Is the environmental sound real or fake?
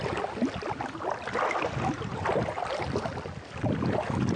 real